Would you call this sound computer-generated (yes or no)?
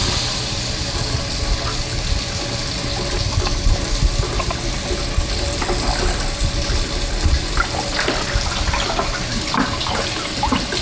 no